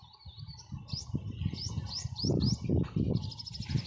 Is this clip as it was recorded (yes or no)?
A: yes